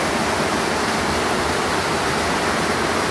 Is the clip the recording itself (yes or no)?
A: yes